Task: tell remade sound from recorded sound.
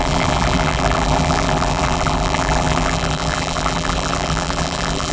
remade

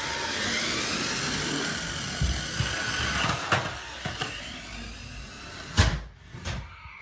recorded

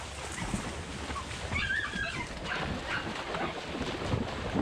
recorded